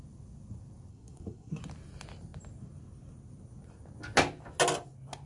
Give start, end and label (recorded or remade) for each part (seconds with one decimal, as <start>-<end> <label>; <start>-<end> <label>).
0.0-0.9 recorded; 0.9-1.6 remade; 1.6-5.3 recorded